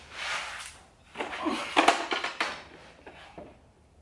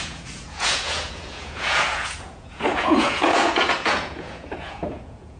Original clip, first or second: first